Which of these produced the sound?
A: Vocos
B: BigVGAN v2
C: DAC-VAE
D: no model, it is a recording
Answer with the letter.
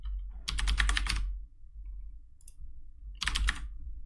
D